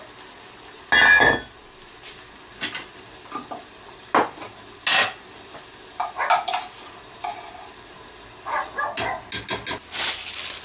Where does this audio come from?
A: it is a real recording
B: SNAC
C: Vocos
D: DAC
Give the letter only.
A